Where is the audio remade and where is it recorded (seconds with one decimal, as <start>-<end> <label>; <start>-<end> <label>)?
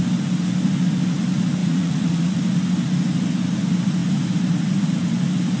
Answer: 0.0-1.6 recorded; 1.6-2.4 remade; 2.4-5.6 recorded